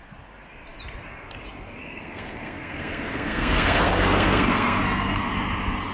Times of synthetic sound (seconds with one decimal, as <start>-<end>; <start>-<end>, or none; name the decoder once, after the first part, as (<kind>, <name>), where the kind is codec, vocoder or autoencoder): 1.8-5.3 (codec, SNAC)